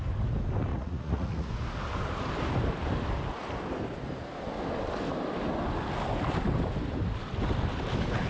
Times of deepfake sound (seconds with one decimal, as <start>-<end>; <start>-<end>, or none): 0.7-1.5